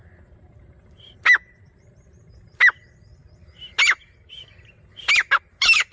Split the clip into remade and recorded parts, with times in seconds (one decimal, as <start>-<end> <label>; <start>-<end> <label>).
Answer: 0.0-5.9 recorded

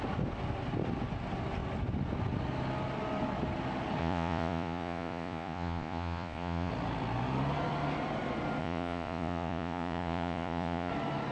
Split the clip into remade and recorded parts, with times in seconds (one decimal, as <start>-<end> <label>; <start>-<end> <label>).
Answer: 0.0-4.0 recorded; 4.0-6.7 remade; 6.7-8.6 recorded; 8.6-10.9 remade; 10.9-11.3 recorded

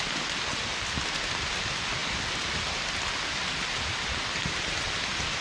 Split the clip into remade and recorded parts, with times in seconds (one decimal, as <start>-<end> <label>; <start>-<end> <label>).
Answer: 0.0-5.4 recorded

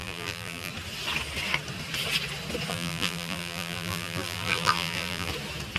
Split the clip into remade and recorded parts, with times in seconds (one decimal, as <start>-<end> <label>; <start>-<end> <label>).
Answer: 0.0-0.7 remade; 0.7-2.7 recorded; 2.7-5.3 remade; 5.3-5.8 recorded

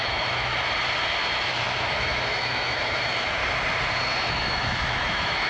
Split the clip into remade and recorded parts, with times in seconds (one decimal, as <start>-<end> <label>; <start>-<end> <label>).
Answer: 0.0-0.5 remade; 0.5-1.4 recorded; 1.4-3.4 remade; 3.4-4.3 recorded; 4.3-5.5 remade

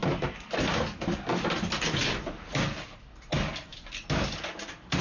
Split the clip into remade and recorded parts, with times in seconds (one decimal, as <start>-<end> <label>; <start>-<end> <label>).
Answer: 0.0-3.7 recorded; 3.7-5.0 remade

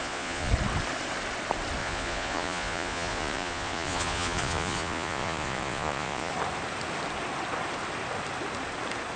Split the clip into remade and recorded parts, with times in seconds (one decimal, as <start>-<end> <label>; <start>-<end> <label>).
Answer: 0.0-0.5 remade; 0.5-1.8 recorded; 1.8-6.3 remade; 6.3-9.2 recorded